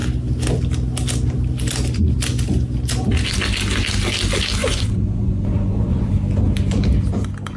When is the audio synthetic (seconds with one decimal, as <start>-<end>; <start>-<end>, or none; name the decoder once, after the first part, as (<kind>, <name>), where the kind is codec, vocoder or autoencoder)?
4.6-6.1 (vocoder, Vocos)